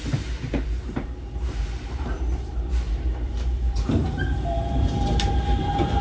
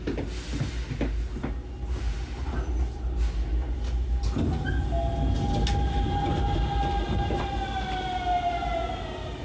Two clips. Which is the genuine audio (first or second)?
second